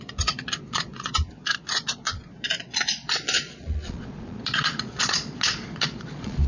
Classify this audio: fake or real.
fake